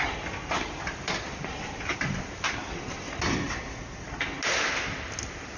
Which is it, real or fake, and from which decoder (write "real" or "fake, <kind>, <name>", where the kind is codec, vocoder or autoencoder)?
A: real